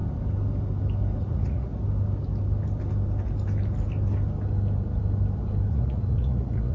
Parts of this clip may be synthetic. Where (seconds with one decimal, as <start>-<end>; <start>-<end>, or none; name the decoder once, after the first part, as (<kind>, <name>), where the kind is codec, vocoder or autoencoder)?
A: 1.2-1.7 (vocoder, Vocos); 5.7-6.7

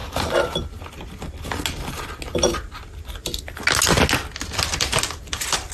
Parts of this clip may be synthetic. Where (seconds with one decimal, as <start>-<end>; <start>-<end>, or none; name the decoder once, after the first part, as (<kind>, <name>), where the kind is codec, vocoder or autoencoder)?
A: none

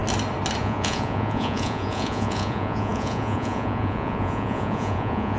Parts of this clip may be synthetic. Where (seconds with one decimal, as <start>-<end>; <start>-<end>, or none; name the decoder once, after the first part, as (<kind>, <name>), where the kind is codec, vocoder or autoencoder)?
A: 0.6-5.4 (vocoder, Vocos)

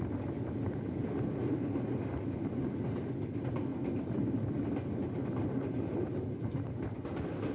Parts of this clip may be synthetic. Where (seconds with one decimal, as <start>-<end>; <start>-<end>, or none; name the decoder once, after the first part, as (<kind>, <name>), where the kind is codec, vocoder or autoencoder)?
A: none

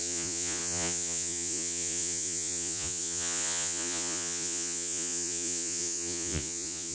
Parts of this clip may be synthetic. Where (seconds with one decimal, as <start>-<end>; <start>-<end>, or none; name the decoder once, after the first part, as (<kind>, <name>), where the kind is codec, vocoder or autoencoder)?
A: 0.0-6.9 (vocoder, Vocos)

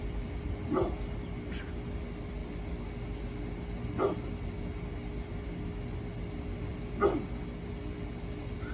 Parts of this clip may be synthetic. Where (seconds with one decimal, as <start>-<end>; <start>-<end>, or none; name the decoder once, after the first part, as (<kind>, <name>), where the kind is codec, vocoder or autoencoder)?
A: none